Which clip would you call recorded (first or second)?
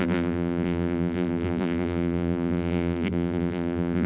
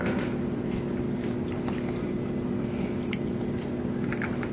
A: second